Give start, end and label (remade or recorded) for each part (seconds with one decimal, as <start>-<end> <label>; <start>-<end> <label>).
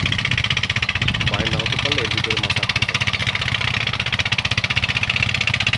0.0-5.8 recorded